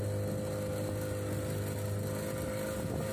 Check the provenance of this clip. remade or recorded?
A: recorded